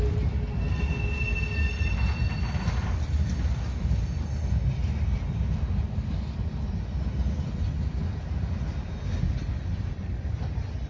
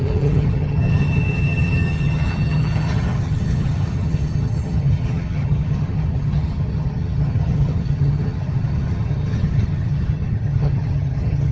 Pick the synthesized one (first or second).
second